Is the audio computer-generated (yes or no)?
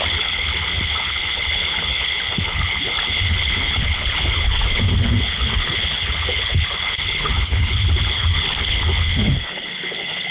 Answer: yes